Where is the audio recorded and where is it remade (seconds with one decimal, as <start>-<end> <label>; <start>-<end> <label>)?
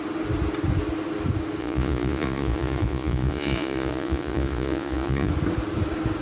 0.0-1.6 recorded; 1.6-5.3 remade; 5.3-6.2 recorded